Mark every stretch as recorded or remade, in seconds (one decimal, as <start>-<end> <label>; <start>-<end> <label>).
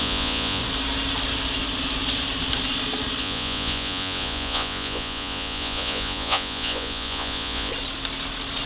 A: 0.0-0.6 remade; 0.6-3.2 recorded; 3.2-7.7 remade; 7.7-8.7 recorded